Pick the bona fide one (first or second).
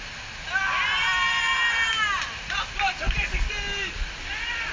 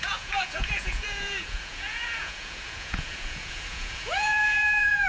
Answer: first